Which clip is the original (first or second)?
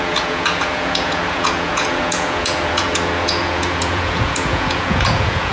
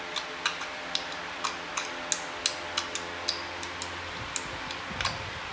second